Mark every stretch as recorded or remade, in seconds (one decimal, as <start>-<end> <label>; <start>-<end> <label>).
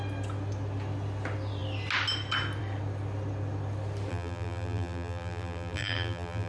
0.0-4.1 recorded; 4.1-6.5 remade